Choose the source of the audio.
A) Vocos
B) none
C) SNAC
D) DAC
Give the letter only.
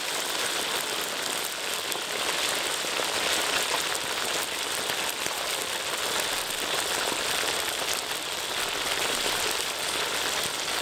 B